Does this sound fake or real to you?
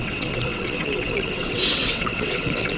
fake